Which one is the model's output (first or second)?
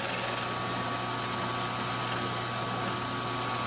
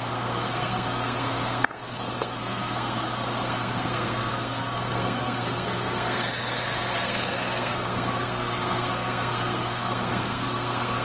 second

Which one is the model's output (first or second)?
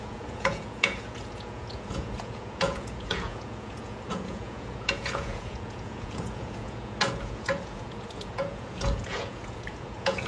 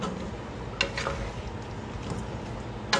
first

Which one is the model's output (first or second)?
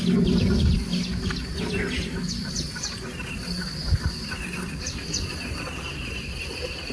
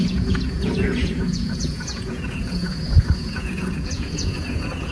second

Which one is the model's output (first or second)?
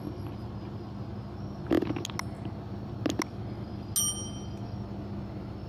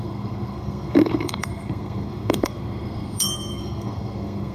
second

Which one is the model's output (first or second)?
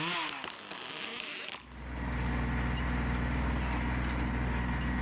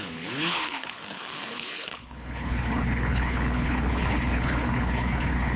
second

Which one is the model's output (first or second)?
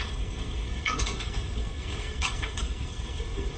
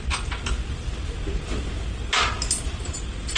first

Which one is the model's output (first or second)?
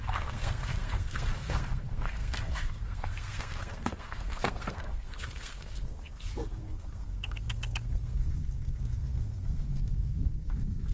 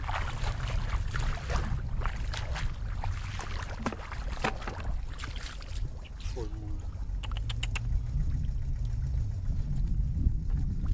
first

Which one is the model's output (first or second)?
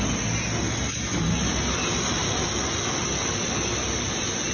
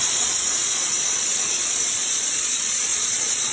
second